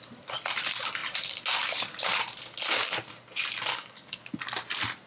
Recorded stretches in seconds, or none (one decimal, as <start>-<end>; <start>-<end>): 0.0-3.7; 4.2-5.1